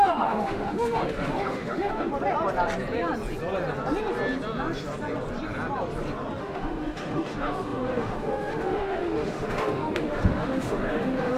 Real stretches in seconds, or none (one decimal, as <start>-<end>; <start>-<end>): 2.1-6.4